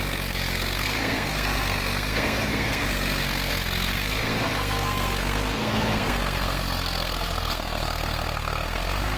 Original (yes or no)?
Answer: no